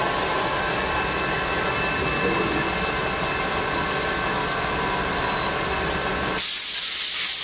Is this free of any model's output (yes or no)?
yes